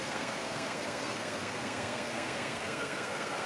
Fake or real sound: fake